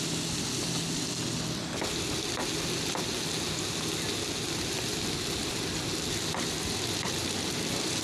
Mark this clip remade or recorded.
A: recorded